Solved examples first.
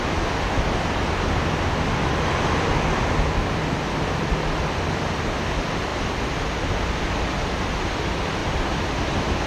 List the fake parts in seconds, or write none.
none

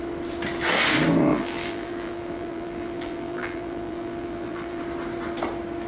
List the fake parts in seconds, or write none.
1.3-4.8 (vocoder, BigVGAN v2)